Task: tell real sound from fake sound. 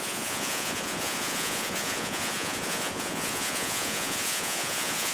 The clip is fake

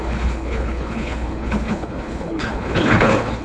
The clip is fake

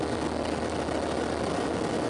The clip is real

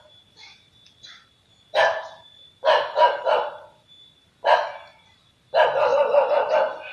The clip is real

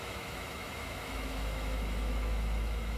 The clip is fake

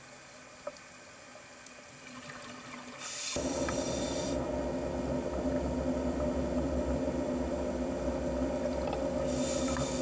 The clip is real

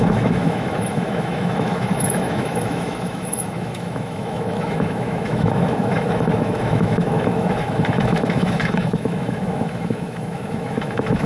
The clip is fake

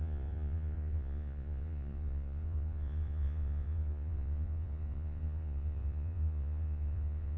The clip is fake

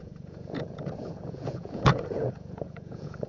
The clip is fake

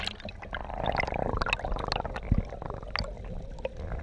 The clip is real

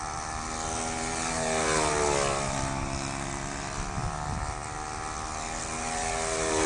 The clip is real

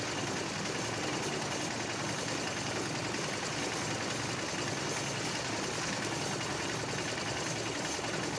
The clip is real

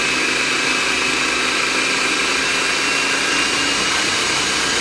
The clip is real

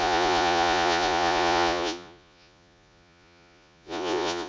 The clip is fake